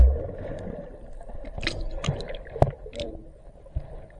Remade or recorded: recorded